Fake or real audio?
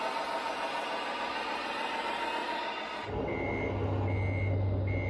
real